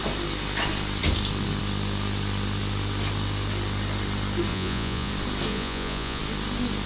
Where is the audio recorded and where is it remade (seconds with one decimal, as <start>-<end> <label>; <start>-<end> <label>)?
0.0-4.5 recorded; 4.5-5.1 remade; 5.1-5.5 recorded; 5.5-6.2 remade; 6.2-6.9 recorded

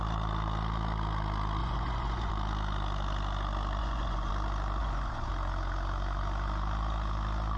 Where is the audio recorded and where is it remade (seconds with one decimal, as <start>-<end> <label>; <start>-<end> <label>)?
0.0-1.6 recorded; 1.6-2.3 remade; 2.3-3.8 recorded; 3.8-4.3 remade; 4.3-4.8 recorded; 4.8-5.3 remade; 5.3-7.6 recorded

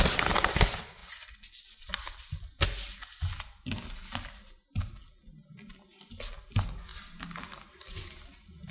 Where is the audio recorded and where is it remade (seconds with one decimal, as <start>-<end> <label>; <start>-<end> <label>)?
0.0-8.7 recorded